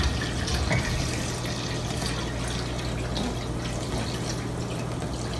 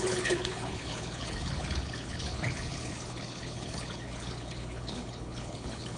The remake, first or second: second